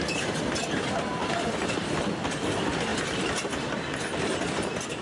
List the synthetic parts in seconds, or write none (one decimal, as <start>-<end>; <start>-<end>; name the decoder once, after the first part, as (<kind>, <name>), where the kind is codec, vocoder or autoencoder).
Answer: 1.2-2.0 (vocoder, BigVGAN v2)